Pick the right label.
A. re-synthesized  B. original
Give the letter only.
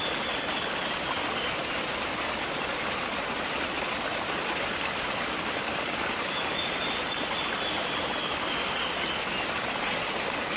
B